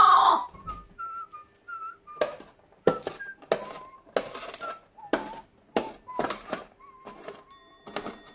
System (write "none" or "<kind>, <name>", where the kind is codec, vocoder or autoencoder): none